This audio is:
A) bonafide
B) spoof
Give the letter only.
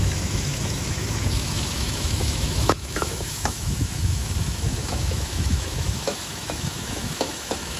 B